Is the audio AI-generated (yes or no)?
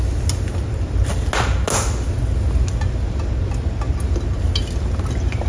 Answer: no